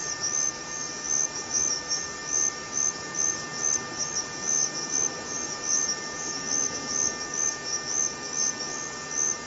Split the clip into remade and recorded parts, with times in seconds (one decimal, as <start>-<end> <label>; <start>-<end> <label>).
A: 0.0-9.5 recorded